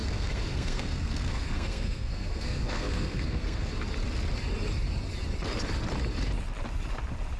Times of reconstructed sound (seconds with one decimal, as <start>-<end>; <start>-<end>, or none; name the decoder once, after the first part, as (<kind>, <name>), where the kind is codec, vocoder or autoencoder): 0.0-3.7 (codec, SNAC)